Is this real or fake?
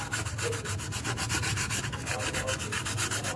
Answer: fake